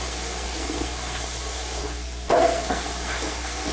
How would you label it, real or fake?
fake